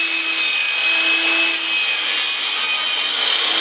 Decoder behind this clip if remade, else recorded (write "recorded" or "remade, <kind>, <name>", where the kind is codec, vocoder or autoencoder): recorded